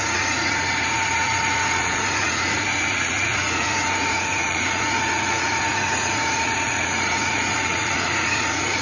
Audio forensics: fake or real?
fake